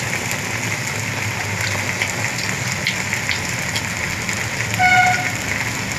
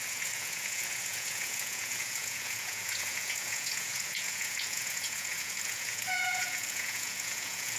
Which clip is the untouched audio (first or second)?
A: first